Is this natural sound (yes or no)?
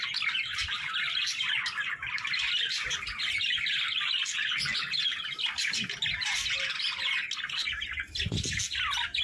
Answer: yes